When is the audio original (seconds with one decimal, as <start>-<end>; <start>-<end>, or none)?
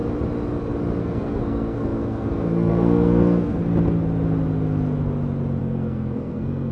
0.0-1.0; 3.6-5.6